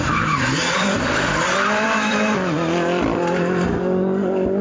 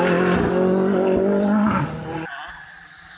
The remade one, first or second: first